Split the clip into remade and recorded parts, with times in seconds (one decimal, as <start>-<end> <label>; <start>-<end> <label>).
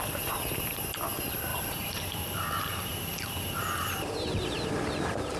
0.0-1.5 recorded; 1.5-4.7 remade; 4.7-5.4 recorded